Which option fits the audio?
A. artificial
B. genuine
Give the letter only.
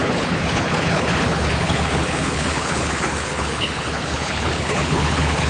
A